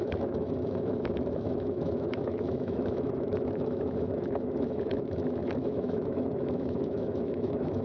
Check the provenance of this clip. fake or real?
fake